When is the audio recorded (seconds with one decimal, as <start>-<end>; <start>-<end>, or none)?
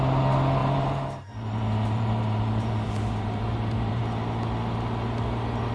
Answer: 0.0-0.6; 4.0-5.7